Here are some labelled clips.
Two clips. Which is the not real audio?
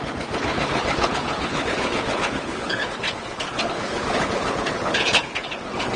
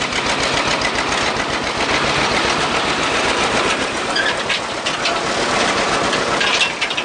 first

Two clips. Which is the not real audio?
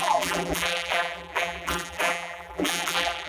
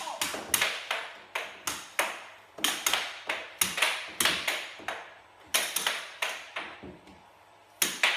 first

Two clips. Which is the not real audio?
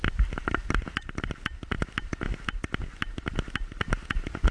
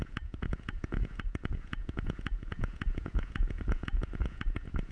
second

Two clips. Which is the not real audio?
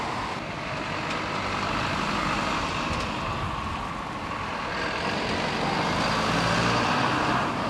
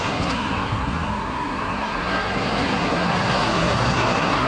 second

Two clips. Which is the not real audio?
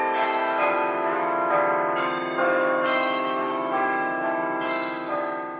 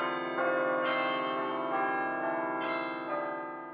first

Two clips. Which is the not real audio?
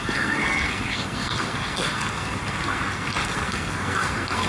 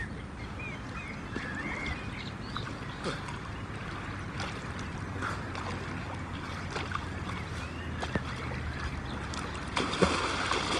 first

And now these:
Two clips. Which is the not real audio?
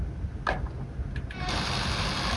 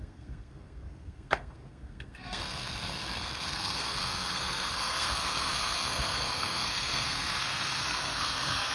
second